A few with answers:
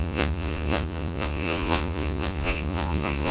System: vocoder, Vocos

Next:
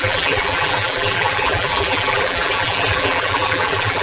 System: vocoder, BigVGAN v2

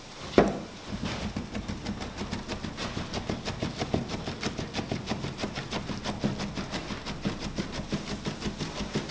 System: none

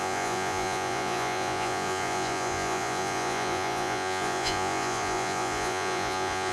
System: vocoder, Vocos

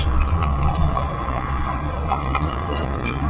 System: vocoder, Vocos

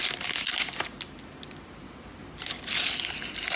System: none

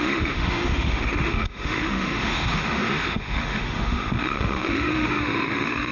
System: autoencoder, DAC-VAE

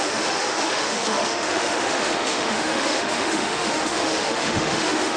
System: autoencoder, DAC-VAE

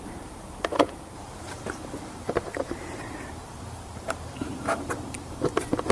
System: vocoder, BigVGAN v2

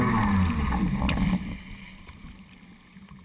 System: none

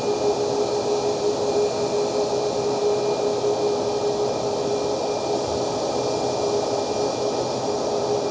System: none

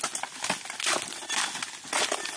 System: none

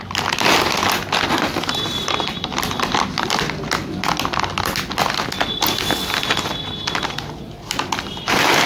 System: none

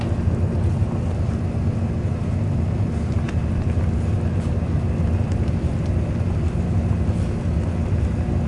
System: none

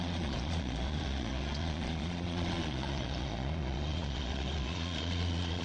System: vocoder, Vocos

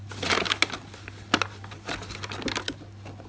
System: none